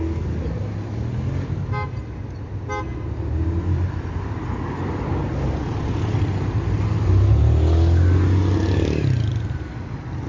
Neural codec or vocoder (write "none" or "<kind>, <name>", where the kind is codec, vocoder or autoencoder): none